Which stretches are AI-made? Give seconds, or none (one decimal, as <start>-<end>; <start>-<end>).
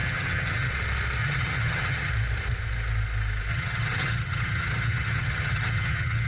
0.0-0.7; 1.2-2.1; 3.5-6.3